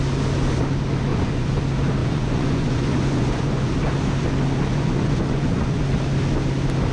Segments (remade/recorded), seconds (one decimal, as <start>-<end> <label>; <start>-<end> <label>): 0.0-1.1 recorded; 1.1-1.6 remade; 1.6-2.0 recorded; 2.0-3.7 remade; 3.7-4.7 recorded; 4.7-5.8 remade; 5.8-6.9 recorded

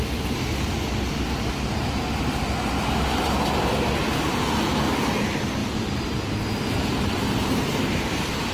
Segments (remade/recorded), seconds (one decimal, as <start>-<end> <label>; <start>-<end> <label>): 0.0-8.5 recorded

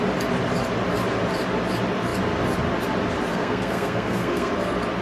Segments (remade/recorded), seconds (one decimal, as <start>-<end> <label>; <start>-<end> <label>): 0.0-3.3 recorded; 3.3-4.5 remade; 4.5-5.0 recorded